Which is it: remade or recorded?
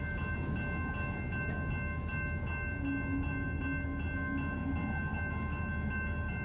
recorded